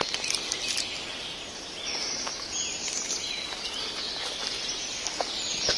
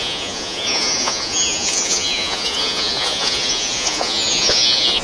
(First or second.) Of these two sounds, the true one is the first